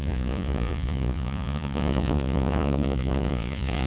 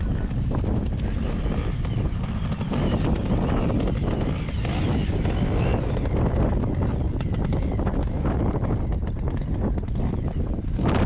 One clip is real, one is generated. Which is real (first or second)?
second